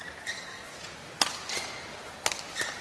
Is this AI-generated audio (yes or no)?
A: yes